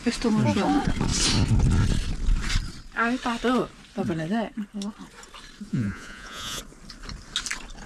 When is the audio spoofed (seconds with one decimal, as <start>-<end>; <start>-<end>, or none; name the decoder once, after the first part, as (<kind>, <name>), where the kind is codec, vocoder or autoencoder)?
5.7-6.6 (vocoder, Vocos)